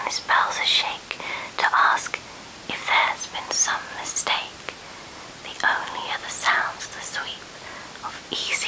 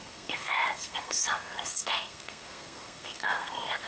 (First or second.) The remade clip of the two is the second